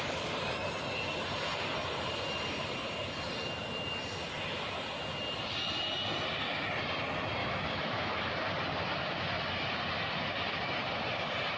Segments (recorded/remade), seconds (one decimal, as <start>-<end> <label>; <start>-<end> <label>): 0.0-7.4 recorded; 7.4-8.3 remade; 8.3-11.6 recorded